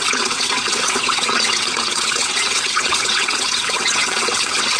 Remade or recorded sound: remade